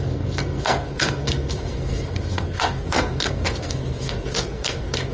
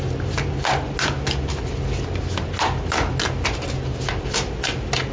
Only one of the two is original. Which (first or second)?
second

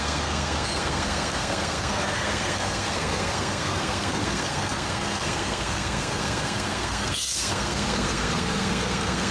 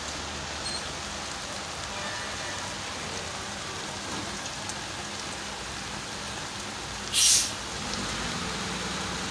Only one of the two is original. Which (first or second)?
second